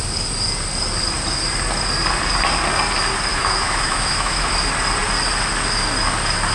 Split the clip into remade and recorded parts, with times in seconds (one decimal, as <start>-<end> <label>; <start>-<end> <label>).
0.0-3.3 recorded; 3.3-4.5 remade; 4.5-6.5 recorded